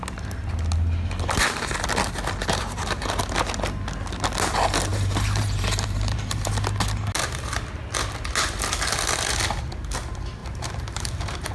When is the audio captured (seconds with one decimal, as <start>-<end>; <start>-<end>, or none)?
0.0-2.4; 3.2-4.9; 6.5-10.4